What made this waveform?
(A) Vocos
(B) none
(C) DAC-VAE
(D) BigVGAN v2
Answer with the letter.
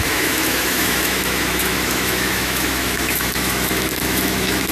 C